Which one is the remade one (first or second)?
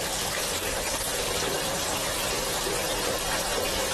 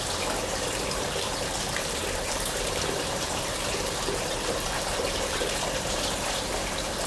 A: second